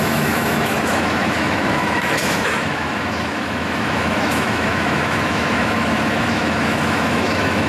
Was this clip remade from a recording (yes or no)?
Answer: yes